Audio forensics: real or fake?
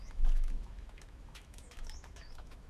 fake